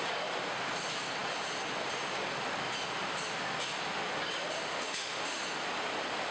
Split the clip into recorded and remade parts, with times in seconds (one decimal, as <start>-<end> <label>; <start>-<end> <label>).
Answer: 0.0-4.7 recorded; 4.7-5.4 remade; 5.4-6.3 recorded